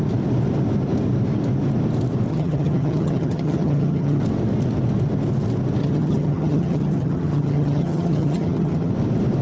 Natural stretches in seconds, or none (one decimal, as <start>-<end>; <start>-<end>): 0.0-2.3; 4.2-5.8; 8.9-9.4